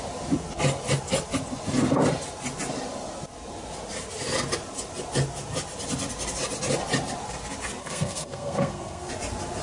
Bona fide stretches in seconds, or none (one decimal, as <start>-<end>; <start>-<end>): 0.0-7.8; 9.1-9.6